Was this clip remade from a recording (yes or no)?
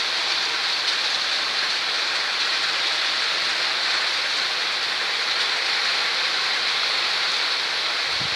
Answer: no